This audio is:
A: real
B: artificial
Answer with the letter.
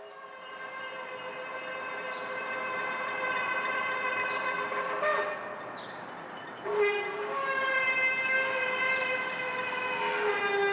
A